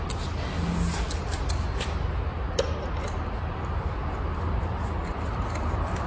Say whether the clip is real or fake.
real